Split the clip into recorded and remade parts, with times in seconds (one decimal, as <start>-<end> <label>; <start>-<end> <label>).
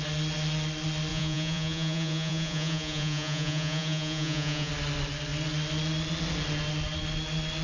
0.0-1.1 recorded; 1.1-4.7 remade; 4.7-7.6 recorded